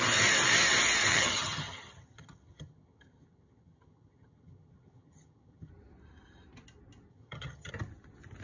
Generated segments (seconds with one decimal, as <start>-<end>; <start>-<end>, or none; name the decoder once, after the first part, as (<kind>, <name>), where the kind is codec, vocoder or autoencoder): 1.1-5.7 (vocoder, HiFi-GAN); 7.1-7.7